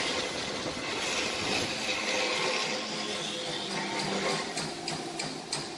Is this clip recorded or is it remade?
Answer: recorded